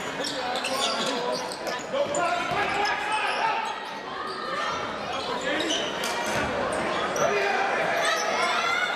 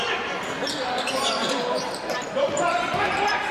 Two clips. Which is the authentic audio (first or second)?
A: first